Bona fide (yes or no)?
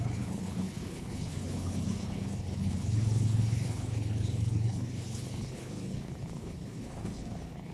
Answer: no